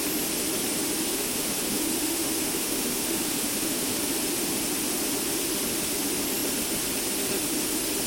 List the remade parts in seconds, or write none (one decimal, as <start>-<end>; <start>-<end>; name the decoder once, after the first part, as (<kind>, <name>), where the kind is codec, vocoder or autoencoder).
1.1-4.0 (autoencoder, DAC-VAE)